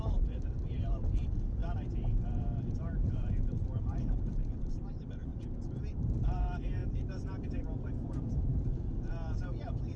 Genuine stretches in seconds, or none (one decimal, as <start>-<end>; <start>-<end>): 5.3-5.9